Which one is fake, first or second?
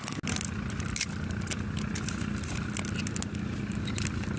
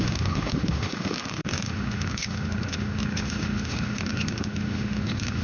second